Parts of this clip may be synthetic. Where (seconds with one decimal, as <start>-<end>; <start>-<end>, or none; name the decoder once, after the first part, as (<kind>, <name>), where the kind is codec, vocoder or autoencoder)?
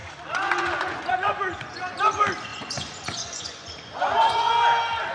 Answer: 0.0-1.8 (vocoder, Vocos); 2.5-4.5